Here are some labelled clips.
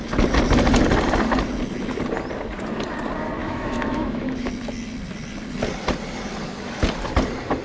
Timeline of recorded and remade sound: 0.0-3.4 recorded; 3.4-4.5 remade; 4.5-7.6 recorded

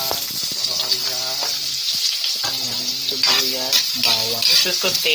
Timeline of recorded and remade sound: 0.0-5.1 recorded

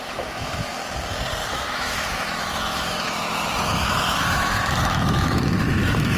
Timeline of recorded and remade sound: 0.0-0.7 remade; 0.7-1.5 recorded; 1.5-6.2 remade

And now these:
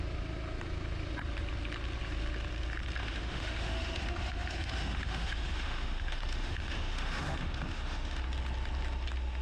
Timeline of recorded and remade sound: 0.0-3.0 recorded; 3.0-8.2 remade; 8.2-9.4 recorded